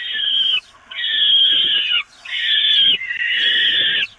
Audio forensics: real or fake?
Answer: real